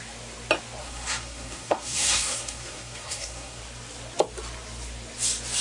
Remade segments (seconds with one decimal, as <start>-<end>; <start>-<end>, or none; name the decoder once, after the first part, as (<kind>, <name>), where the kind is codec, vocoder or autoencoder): 0.8-3.6 (codec, SNAC)